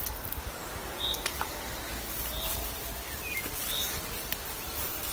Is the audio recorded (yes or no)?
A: no